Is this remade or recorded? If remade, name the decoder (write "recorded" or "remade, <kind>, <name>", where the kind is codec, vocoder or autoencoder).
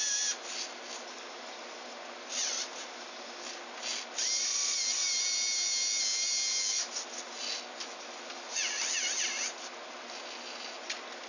recorded